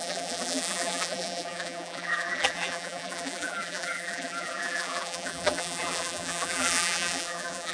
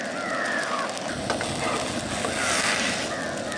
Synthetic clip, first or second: first